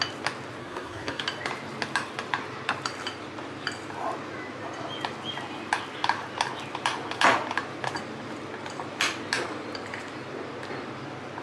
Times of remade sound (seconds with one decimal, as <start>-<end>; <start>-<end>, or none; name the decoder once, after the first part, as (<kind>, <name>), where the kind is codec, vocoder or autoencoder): 0.6-1.2 (codec, SNAC)